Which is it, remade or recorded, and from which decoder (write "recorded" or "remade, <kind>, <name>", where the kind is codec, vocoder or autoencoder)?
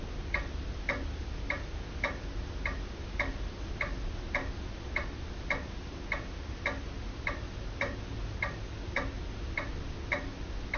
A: recorded